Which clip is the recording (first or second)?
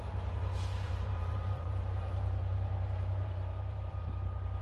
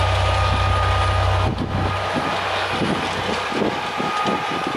second